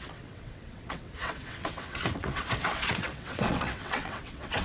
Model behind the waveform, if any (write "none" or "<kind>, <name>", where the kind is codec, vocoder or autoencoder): vocoder, WaveNeXt